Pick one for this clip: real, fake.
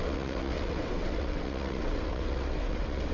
fake